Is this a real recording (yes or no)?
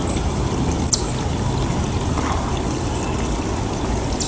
yes